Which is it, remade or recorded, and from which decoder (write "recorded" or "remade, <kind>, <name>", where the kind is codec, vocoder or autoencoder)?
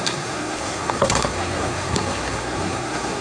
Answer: remade, codec, SNAC